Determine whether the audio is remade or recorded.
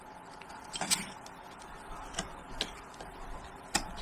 recorded